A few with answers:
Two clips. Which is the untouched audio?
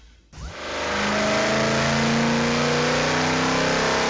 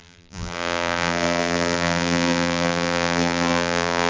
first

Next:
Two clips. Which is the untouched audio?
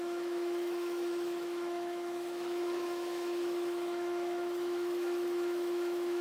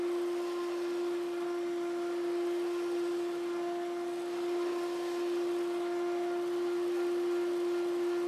second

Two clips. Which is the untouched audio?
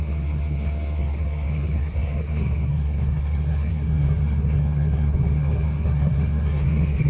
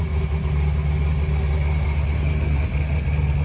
second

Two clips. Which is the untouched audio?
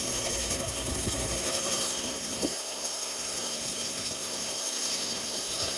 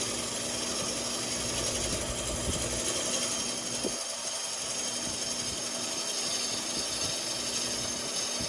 second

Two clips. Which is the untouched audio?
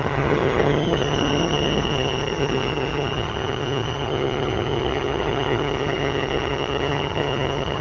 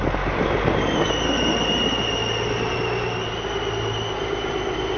second